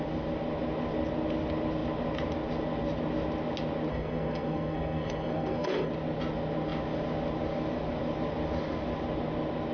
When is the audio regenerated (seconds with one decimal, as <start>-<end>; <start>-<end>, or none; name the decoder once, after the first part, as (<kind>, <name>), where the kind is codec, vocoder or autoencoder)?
3.9-5.9 (codec, SNAC)